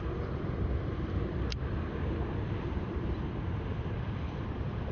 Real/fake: fake